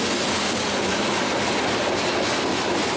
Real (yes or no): yes